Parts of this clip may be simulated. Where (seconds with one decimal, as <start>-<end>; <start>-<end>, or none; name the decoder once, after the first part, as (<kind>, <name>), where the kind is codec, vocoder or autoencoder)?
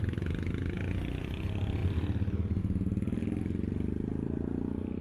none